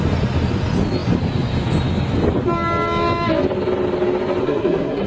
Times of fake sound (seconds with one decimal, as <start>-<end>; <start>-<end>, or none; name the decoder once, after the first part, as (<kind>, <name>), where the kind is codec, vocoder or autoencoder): 4.4-5.1 (codec, SNAC)